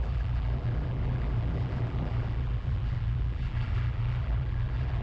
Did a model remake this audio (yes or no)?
yes